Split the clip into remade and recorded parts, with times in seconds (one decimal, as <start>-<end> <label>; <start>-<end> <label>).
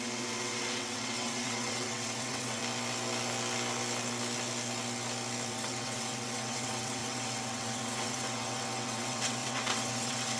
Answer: 0.0-2.6 remade; 2.6-5.5 recorded; 5.5-10.4 remade